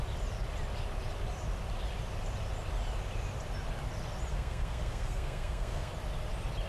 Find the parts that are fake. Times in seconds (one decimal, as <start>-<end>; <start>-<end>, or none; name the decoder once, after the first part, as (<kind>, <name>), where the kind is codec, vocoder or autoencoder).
4.3-5.9 (codec, SNAC)